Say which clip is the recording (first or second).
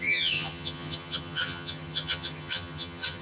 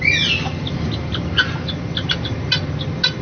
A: second